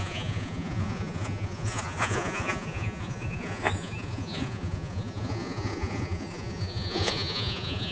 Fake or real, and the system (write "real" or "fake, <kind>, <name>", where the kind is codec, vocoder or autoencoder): fake, vocoder, Vocos